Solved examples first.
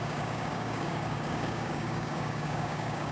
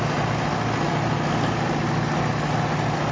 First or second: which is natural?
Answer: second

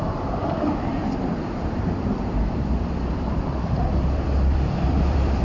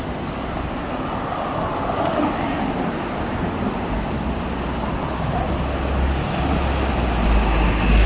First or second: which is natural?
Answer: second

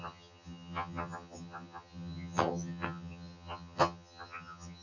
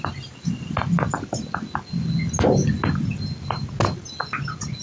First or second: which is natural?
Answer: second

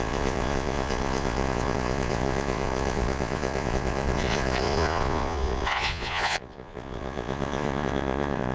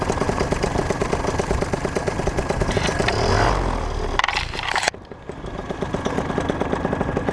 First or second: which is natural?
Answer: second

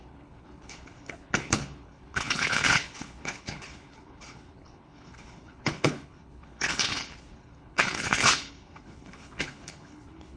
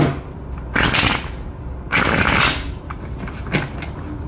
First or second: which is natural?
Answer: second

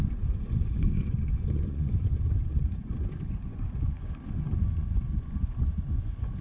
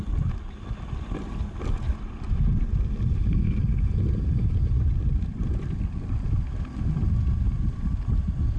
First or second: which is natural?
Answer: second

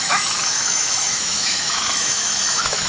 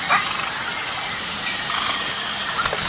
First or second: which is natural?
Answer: second